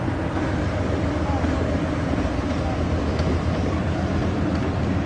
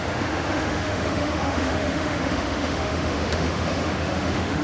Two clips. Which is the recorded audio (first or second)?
first